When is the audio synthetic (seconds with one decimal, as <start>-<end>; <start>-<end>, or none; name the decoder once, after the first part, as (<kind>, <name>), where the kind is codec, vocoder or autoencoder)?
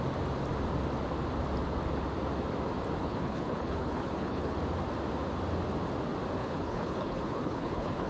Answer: 3.0-4.6 (codec, HILCodec); 6.4-8.1